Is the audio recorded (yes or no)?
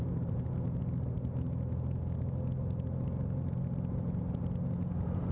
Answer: yes